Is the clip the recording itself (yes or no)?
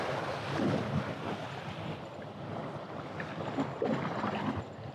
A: yes